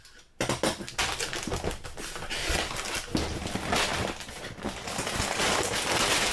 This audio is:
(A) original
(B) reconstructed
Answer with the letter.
A